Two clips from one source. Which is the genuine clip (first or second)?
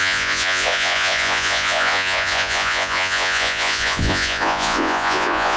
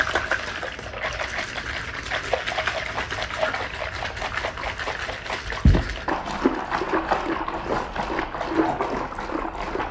second